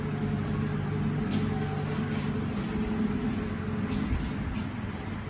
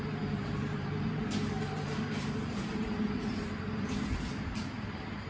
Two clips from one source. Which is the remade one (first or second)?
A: second